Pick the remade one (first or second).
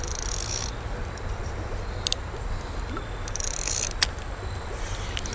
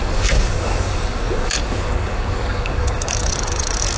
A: second